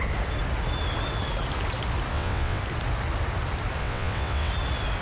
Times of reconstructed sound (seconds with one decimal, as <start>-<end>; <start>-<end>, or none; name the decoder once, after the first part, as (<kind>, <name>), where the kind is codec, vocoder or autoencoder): 2.1-2.6 (vocoder, WaveNeXt); 3.8-4.5